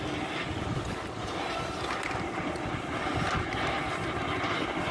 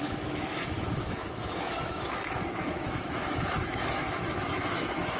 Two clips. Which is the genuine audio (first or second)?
first